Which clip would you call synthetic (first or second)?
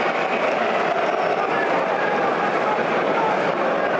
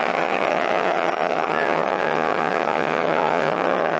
second